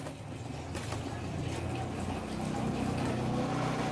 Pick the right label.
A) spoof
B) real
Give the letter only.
B